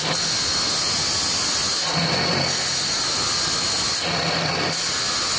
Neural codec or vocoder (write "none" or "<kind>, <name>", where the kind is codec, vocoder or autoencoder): none